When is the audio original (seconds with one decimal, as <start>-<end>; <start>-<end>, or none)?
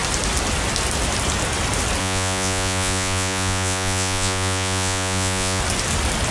0.0-2.0; 5.6-6.3